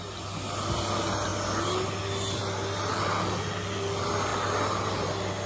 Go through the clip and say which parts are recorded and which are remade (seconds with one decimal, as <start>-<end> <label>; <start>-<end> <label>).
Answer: 0.0-5.5 recorded